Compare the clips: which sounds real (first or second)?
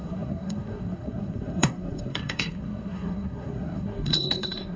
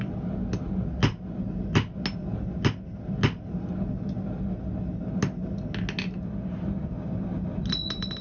second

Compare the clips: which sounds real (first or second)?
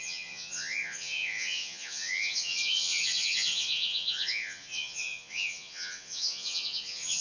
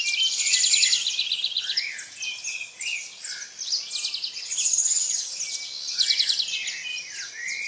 second